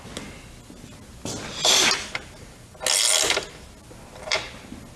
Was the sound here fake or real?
real